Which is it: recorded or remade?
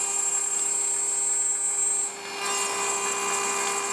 recorded